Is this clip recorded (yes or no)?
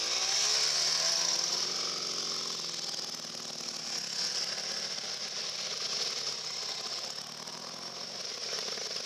yes